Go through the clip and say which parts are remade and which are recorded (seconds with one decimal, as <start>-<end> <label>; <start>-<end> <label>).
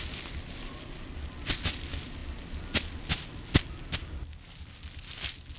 0.0-5.6 recorded